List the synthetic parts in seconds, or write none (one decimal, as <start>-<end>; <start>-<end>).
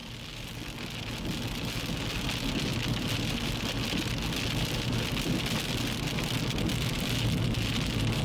none